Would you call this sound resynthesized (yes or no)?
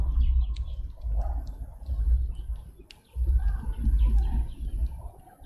no